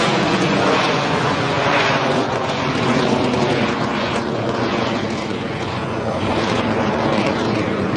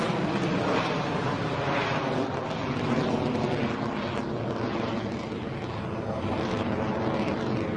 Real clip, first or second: second